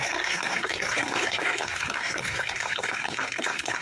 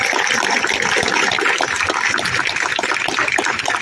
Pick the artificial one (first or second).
first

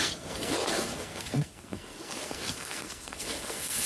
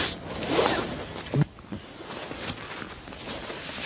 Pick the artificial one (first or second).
first